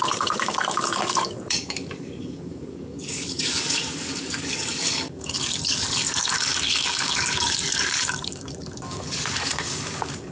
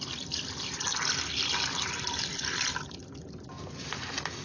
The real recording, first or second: second